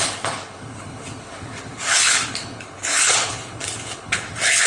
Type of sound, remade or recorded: remade